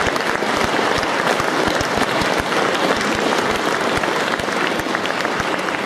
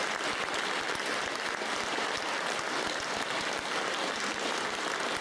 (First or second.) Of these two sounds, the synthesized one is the first